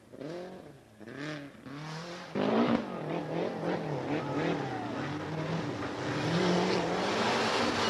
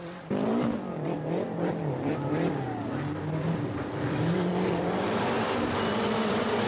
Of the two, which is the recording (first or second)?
first